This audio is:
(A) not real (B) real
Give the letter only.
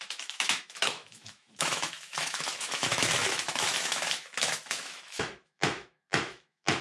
A